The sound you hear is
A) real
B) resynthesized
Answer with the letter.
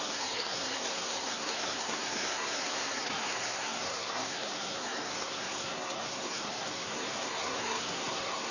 B